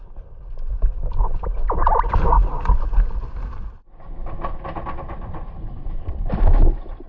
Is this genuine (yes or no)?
yes